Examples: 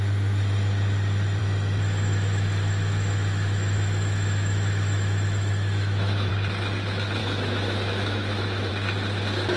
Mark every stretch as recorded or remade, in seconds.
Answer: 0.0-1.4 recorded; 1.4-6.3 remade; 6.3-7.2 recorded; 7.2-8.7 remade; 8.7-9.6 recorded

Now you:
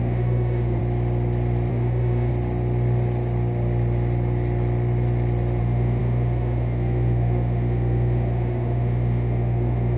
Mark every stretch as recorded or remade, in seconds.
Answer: 0.0-0.8 remade; 0.8-1.7 recorded; 1.7-2.3 remade; 2.3-5.6 recorded; 5.6-10.0 remade